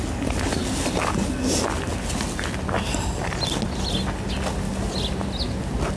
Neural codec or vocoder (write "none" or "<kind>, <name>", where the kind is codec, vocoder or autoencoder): none